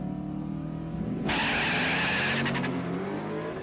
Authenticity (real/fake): real